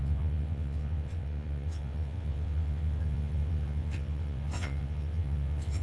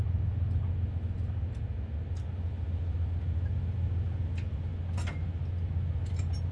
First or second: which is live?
second